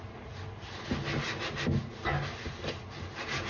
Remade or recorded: recorded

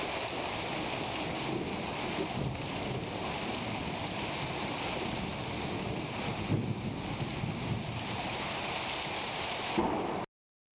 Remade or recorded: recorded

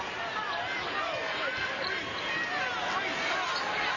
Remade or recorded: recorded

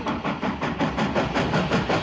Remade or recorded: recorded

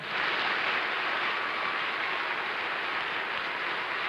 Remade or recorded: recorded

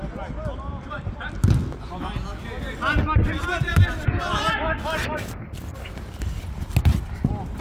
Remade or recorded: recorded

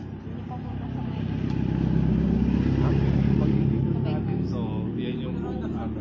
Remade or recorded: recorded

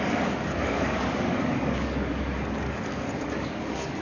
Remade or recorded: remade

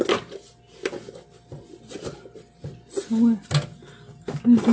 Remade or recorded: recorded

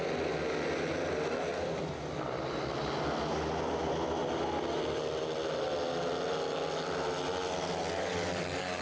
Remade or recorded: recorded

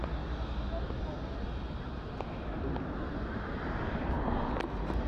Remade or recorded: recorded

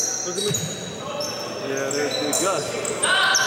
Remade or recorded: recorded